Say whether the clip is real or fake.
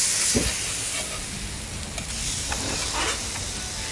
real